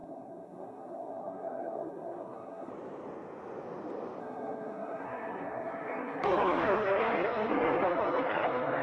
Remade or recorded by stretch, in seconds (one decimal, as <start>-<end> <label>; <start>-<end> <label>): 0.0-2.7 remade; 2.7-4.2 recorded; 4.2-8.8 remade